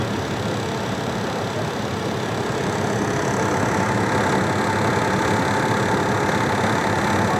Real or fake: real